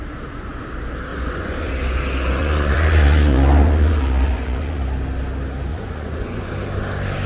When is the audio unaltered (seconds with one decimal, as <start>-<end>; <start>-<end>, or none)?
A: 0.0-1.1; 1.7-2.4; 4.8-5.7; 6.5-7.3